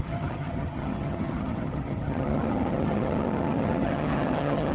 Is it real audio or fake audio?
fake